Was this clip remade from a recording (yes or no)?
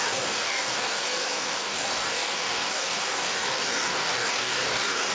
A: yes